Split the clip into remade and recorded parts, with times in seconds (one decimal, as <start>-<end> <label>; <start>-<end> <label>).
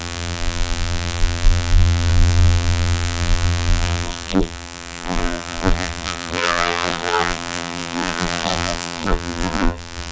0.0-10.1 remade